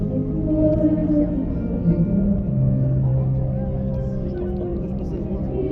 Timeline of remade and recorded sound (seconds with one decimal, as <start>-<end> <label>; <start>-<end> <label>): 0.0-4.7 recorded; 4.7-5.7 remade